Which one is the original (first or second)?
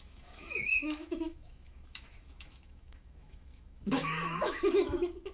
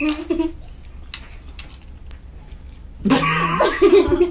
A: second